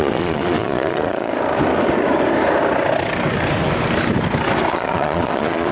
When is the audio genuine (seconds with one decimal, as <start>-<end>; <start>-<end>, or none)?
1.3-4.7